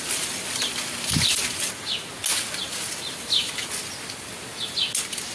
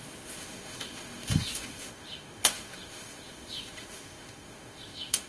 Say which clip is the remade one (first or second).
second